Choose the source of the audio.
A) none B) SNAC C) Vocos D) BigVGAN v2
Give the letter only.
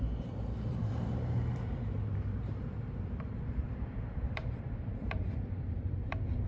D